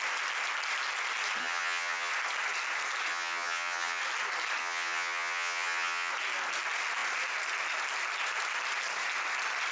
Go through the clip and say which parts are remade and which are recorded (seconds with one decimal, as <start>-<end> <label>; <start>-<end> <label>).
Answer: 0.0-1.4 recorded; 1.4-2.1 remade; 2.1-3.1 recorded; 3.1-4.0 remade; 4.0-4.6 recorded; 4.6-6.1 remade; 6.1-9.7 recorded